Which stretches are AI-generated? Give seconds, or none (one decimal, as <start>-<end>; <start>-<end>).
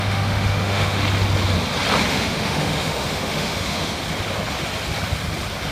0.0-1.0; 2.1-4.0